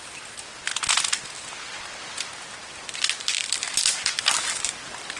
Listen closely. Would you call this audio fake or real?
real